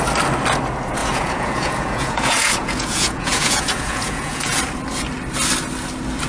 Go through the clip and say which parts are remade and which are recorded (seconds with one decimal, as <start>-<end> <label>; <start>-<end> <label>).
0.0-1.0 recorded; 1.0-4.6 remade; 4.6-6.3 recorded